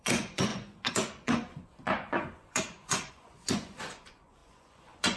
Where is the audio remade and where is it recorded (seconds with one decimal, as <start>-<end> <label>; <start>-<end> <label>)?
0.0-5.2 remade